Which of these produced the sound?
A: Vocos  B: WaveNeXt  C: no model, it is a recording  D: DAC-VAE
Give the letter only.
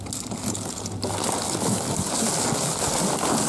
C